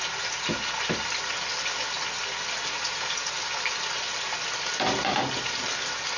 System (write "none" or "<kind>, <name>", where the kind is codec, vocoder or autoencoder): none